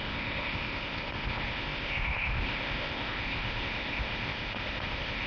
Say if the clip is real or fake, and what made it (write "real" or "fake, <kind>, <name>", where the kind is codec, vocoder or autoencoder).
fake, codec, ZipCodec